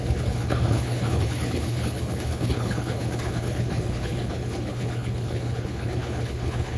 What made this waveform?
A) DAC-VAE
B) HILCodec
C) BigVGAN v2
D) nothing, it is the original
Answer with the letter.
B